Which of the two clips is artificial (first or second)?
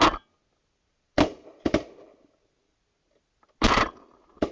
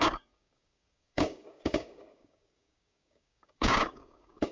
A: second